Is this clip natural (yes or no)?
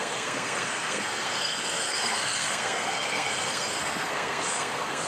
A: no